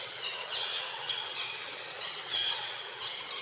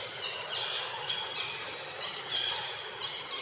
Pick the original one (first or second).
second